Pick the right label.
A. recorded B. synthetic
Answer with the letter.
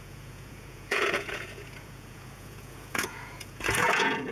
B